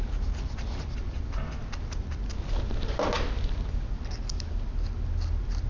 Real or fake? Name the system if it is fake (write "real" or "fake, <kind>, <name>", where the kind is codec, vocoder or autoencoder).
real